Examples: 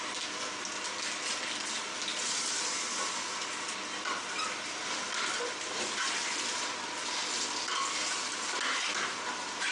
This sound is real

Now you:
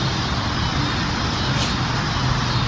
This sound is real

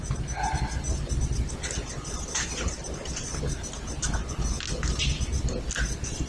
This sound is real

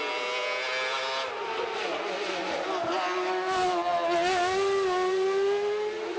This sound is real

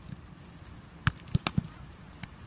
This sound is fake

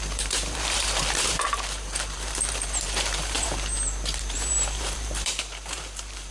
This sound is fake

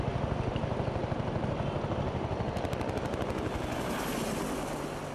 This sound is real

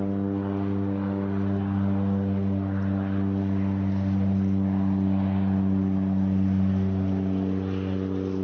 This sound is real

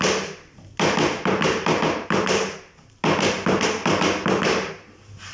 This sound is real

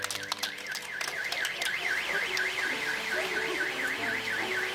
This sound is real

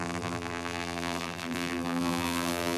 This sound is fake